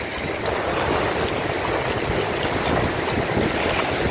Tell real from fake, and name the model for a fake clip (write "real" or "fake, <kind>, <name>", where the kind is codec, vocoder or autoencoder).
real